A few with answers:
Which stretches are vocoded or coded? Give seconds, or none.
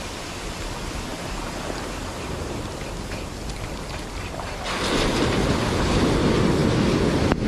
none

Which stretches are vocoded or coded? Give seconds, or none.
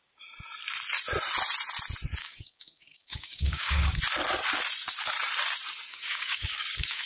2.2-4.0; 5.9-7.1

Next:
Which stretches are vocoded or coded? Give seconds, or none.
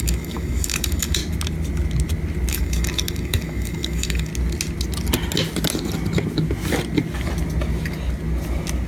0.0-1.2; 2.5-4.3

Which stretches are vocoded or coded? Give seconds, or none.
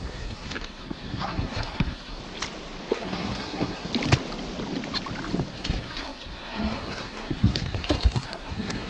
0.0-2.2; 2.9-3.9; 5.5-8.9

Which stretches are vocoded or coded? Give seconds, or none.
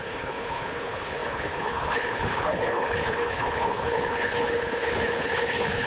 0.0-5.9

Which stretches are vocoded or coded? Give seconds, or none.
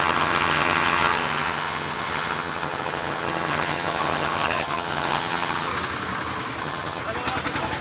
0.0-5.7; 6.6-7.0